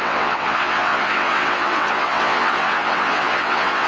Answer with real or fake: fake